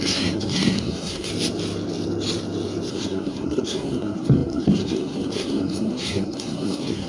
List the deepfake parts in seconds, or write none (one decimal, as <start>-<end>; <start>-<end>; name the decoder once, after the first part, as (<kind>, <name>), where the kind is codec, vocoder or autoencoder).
0.0-1.3 (codec, SNAC); 2.9-7.1